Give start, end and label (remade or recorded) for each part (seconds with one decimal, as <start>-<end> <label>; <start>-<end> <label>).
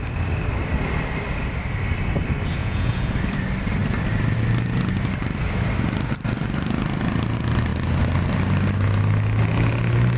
0.0-2.6 recorded; 2.6-3.1 remade; 3.1-10.2 recorded